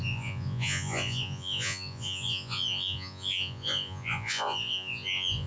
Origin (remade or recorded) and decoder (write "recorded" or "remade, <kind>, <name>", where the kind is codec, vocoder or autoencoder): remade, vocoder, Vocos